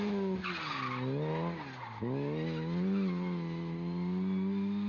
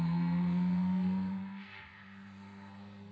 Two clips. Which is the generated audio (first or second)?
second